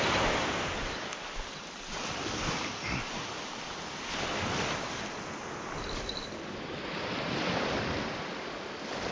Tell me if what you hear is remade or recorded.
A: recorded